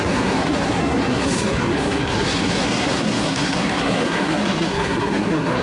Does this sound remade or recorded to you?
remade